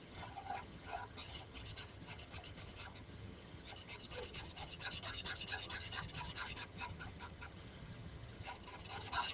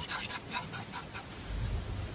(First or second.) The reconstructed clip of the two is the first